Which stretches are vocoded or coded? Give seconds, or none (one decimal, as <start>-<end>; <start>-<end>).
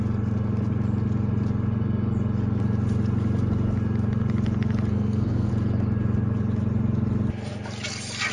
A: 4.9-5.5